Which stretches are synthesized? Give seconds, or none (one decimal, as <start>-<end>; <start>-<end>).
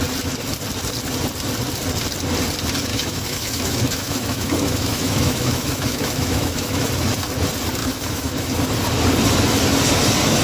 2.9-6.9; 7.8-8.5